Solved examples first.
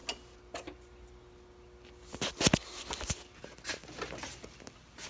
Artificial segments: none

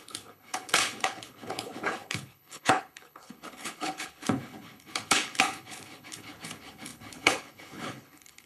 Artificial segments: 0.0-8.5 (codec, HILCodec)

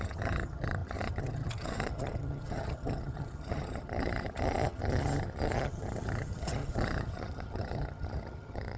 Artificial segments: 0.0-8.8 (vocoder, HiFi-GAN)